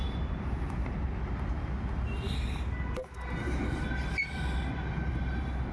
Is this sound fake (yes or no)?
no